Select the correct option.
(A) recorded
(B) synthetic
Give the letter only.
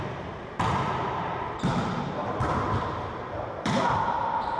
B